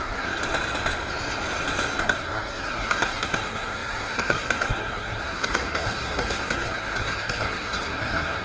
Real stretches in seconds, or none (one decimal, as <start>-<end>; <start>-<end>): 0.4-2.0